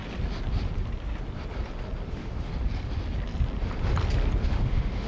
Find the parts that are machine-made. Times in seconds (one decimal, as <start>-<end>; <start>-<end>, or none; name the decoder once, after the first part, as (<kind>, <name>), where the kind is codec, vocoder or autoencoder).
2.1-2.5 (autoencoder, DAC-VAE); 4.4-5.1